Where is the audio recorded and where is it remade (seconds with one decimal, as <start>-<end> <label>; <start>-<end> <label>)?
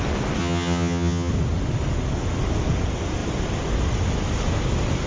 0.0-0.4 recorded; 0.4-1.3 remade; 1.3-5.1 recorded